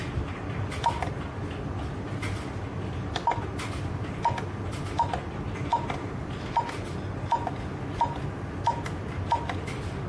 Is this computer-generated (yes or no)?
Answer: no